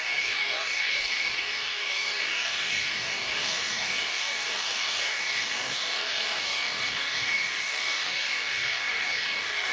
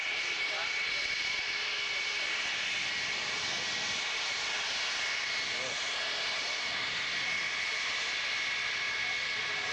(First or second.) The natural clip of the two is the second